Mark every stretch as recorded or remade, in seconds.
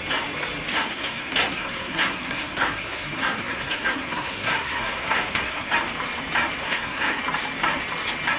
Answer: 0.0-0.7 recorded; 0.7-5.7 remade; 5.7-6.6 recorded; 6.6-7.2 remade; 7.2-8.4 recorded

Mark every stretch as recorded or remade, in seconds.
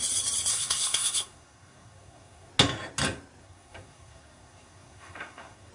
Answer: 0.0-0.5 recorded; 0.5-2.5 remade; 2.5-3.4 recorded; 3.4-5.7 remade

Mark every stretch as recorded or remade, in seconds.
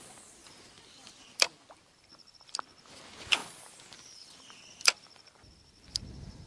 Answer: 0.0-6.5 recorded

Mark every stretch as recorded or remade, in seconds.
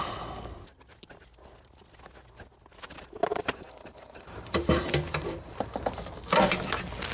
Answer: 0.0-3.3 recorded; 3.3-5.8 remade; 5.8-7.1 recorded